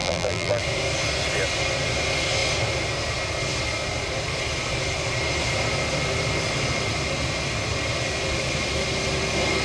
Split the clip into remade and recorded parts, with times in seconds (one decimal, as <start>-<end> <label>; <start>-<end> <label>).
0.0-0.6 remade; 0.6-9.6 recorded